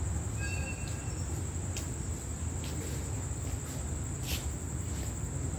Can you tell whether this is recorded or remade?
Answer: recorded